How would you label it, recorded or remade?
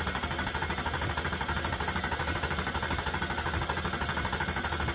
recorded